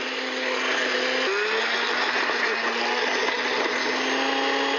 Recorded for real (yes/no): yes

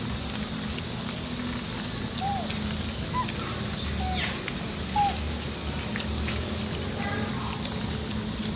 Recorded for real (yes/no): yes